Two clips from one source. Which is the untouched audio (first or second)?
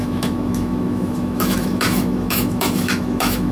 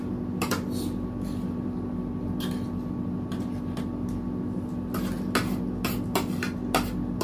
second